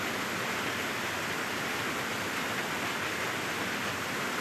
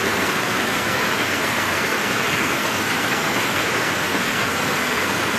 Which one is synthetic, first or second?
second